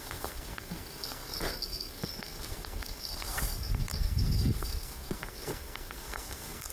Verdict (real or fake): fake